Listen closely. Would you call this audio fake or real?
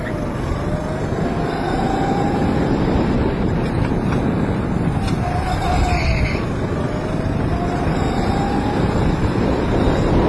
real